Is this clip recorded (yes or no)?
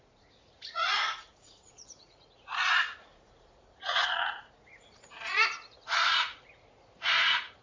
no